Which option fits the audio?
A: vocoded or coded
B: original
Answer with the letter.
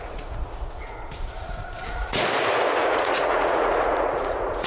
A